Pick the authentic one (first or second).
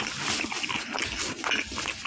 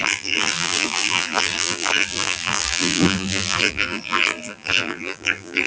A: first